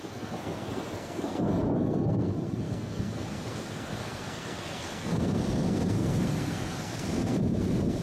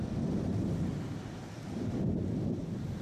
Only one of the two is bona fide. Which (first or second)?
second